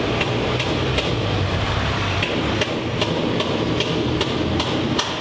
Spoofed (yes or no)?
yes